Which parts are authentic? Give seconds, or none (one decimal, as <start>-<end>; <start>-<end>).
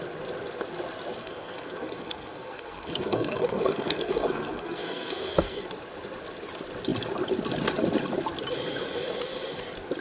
0.0-1.2; 5.6-10.0